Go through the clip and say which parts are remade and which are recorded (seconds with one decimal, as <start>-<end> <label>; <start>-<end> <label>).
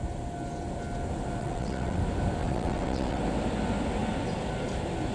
0.0-1.4 recorded; 1.4-2.0 remade; 2.0-2.4 recorded; 2.4-3.2 remade; 3.2-5.1 recorded